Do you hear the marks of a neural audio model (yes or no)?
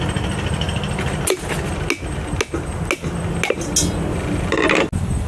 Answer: no